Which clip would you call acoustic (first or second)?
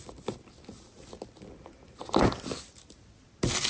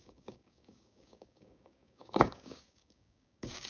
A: first